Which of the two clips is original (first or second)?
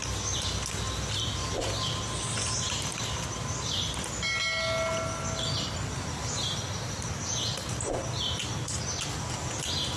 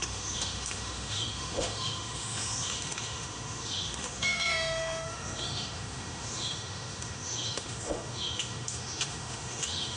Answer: first